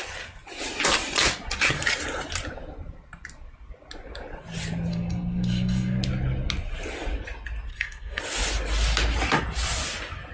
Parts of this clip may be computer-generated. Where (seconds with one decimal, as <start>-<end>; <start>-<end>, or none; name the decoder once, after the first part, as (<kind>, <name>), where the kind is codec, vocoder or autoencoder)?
4.9-6.0 (codec, SNAC); 7.7-8.2